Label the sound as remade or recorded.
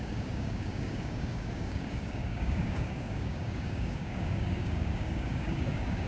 remade